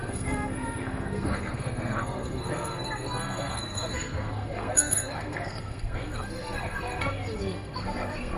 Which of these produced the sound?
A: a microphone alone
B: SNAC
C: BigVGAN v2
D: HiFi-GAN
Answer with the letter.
B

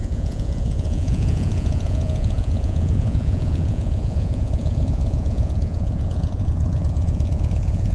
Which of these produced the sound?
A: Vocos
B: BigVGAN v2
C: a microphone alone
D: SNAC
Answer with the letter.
A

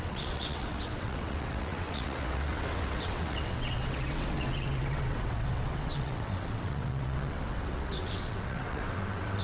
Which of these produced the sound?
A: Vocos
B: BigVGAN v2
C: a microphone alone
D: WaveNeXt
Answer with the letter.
D